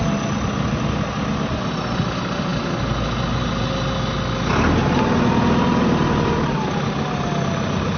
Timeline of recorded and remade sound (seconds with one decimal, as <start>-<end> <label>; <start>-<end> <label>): 0.0-8.0 recorded